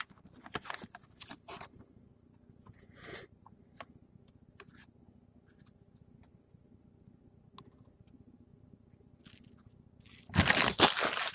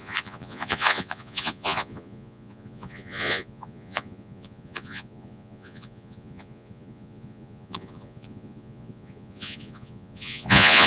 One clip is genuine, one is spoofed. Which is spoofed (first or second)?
second